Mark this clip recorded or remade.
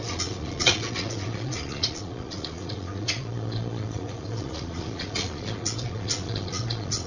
remade